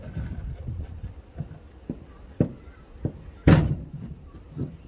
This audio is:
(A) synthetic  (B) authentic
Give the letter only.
A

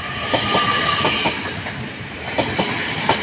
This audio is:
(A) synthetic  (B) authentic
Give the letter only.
B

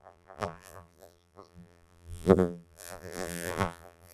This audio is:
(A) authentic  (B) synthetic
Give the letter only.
B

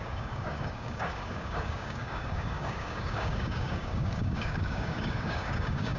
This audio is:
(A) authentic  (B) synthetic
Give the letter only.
B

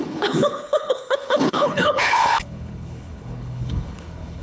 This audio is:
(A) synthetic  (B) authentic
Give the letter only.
A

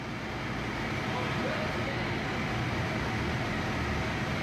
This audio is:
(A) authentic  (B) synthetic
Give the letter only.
A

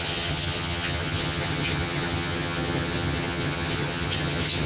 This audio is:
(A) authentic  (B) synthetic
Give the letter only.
B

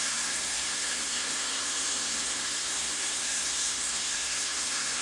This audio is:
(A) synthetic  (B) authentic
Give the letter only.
A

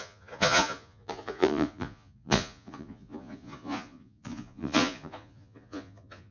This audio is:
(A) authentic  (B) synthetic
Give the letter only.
B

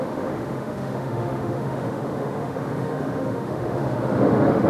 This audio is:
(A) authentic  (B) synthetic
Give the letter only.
B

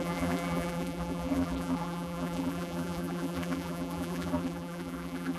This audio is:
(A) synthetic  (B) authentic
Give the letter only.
A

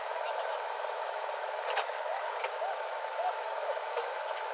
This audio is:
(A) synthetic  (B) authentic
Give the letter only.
A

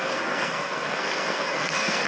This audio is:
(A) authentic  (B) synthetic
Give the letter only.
B